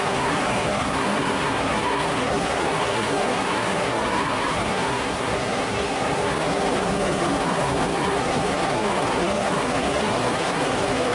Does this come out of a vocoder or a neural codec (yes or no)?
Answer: yes